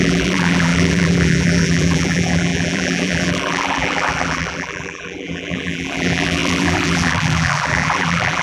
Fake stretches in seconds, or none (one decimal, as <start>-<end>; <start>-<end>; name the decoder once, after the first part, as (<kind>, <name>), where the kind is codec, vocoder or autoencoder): 0.0-8.4 (vocoder, BigVGAN v2)